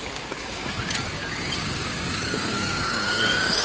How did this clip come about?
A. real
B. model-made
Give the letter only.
B